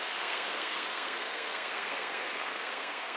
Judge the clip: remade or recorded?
remade